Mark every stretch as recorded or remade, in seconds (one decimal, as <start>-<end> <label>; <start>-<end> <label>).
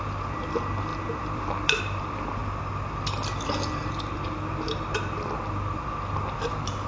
0.0-2.4 remade; 2.4-6.5 recorded; 6.5-6.9 remade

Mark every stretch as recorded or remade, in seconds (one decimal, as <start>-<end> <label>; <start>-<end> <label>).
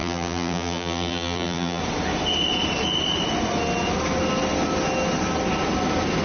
0.0-1.8 remade; 1.8-6.2 recorded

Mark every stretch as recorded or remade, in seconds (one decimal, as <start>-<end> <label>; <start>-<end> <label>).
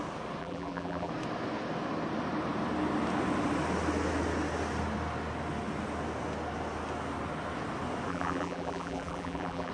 0.0-0.4 recorded; 0.4-1.1 remade; 1.1-8.1 recorded; 8.1-9.7 remade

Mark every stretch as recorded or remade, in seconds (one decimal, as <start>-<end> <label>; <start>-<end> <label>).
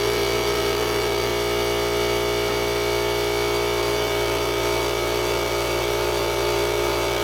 0.0-1.3 remade; 1.3-3.8 recorded; 3.8-7.2 remade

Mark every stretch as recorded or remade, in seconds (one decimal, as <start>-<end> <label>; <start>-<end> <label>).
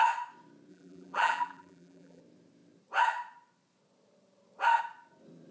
0.0-0.7 recorded; 0.7-2.2 remade; 2.2-5.5 recorded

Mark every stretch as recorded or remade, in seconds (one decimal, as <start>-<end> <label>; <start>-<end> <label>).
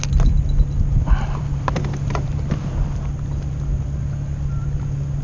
0.0-1.4 recorded; 1.4-3.0 remade; 3.0-5.2 recorded